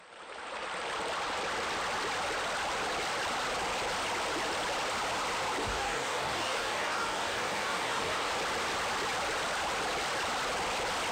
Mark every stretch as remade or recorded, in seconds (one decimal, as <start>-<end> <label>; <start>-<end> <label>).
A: 0.0-5.6 recorded; 5.6-8.3 remade; 8.3-11.1 recorded